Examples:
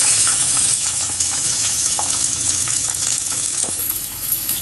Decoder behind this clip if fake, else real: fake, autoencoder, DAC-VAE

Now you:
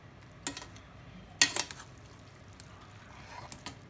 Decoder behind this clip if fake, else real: real